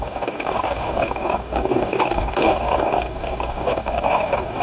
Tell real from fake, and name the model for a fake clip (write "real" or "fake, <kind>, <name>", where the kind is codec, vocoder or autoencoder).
fake, codec, DAC